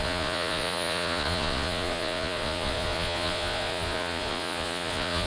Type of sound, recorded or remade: remade